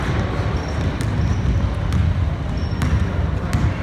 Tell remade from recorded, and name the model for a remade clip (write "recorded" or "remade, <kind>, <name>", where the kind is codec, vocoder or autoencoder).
recorded